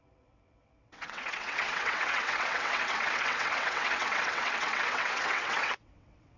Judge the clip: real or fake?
fake